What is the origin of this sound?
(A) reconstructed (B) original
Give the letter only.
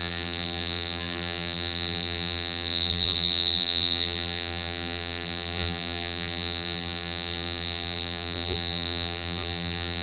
A